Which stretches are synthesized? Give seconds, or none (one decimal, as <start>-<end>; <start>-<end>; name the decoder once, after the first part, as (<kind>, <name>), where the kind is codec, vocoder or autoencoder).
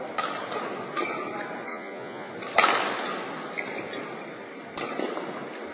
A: 1.7-2.3 (vocoder, Vocos)